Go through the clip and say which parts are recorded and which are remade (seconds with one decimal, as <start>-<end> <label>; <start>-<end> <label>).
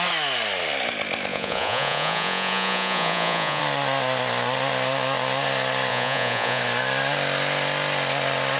0.0-1.3 recorded; 1.3-3.6 remade; 3.6-5.9 recorded; 5.9-6.6 remade; 6.6-8.6 recorded